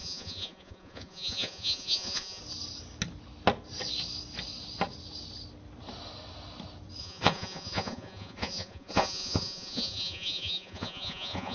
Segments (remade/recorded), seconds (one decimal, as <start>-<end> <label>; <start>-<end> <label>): 0.0-2.4 remade; 2.4-7.0 recorded; 7.0-11.5 remade